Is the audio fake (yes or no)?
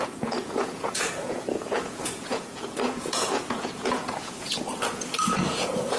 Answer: yes